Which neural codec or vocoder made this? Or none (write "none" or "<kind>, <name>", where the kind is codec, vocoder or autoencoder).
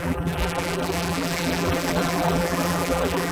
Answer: vocoder, BigVGAN v2